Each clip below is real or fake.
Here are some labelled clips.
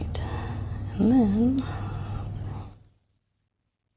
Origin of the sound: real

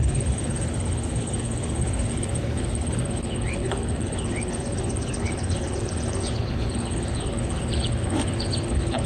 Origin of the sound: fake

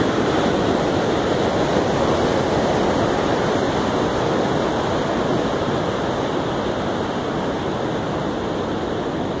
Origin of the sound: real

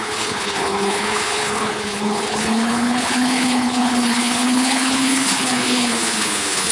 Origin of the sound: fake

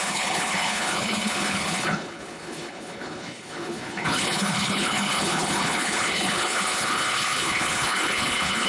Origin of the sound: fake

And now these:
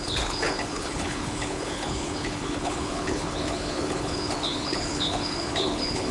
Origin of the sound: fake